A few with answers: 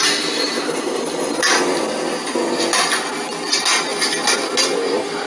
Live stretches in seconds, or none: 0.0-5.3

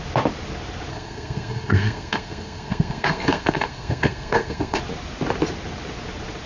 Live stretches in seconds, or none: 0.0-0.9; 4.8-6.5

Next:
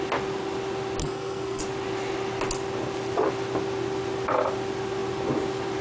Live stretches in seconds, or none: 0.0-1.0; 1.6-5.8

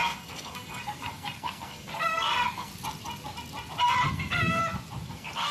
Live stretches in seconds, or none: 2.7-4.1; 4.6-5.1

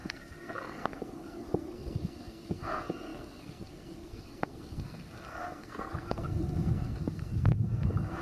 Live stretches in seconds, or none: none

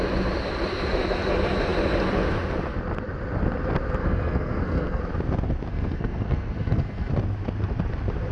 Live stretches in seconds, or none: 0.0-4.0; 5.0-5.7; 7.1-8.3